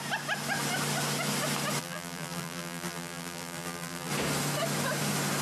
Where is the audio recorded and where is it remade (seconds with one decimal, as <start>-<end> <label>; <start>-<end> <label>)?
0.0-1.8 recorded; 1.8-4.1 remade; 4.1-5.4 recorded